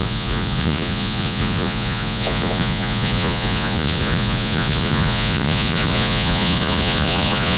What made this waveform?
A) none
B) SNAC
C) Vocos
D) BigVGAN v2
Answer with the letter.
C